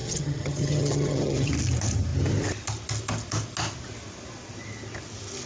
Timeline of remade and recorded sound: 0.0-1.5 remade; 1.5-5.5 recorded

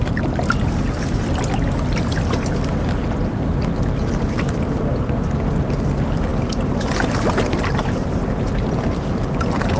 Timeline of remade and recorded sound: 0.0-9.8 recorded

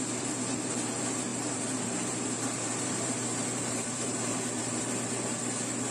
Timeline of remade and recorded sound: 0.0-1.3 recorded; 1.3-4.8 remade; 4.8-5.9 recorded

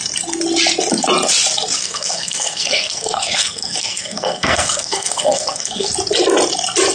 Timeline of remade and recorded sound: 0.0-1.8 recorded; 1.8-5.9 remade; 5.9-6.9 recorded

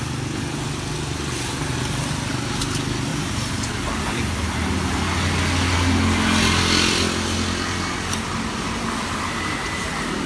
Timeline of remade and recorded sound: 0.0-3.1 recorded; 3.1-4.0 remade; 4.0-10.3 recorded

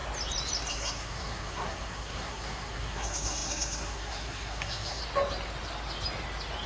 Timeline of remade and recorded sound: 0.0-0.7 recorded; 0.7-5.0 remade; 5.0-6.7 recorded

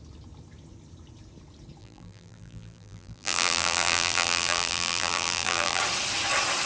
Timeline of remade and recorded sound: 0.0-1.8 recorded; 1.8-5.8 remade; 5.8-6.7 recorded